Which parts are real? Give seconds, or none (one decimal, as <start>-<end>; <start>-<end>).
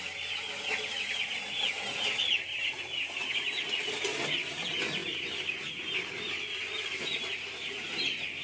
0.0-8.4